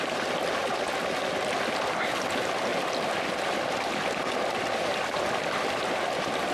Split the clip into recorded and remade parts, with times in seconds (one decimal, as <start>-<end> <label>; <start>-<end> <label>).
0.0-6.5 recorded